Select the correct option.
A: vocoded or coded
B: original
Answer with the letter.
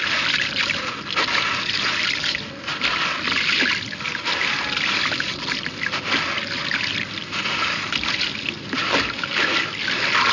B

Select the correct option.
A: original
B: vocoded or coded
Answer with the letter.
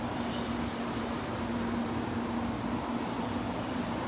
A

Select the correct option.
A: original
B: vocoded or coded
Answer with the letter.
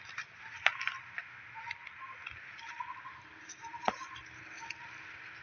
A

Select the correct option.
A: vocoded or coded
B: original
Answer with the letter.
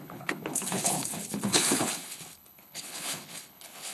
A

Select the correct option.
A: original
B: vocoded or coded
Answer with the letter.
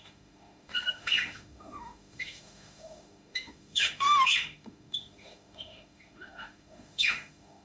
B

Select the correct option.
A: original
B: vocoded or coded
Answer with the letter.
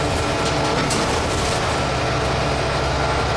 A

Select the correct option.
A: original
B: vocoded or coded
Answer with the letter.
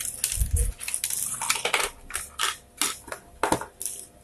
A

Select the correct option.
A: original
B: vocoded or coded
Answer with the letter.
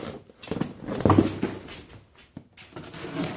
A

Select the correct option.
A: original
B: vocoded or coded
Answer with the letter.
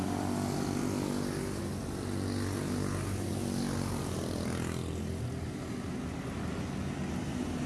A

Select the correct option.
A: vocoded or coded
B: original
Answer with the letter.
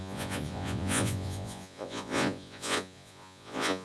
A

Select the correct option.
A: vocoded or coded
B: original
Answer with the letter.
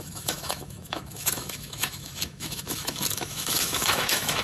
A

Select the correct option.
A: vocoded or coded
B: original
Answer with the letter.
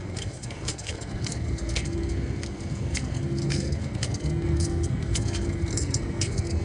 A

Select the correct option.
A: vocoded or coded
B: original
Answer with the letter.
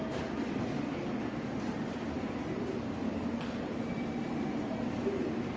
B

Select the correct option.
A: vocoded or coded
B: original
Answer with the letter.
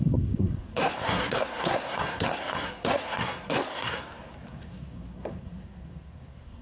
A